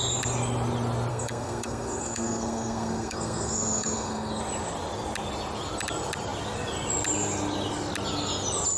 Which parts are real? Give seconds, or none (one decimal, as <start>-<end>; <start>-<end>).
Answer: 0.0-1.1; 4.4-8.8